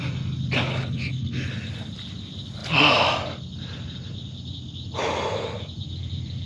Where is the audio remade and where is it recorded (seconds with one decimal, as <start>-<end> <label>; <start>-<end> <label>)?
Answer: 0.0-0.7 recorded; 0.7-1.5 remade; 1.5-6.5 recorded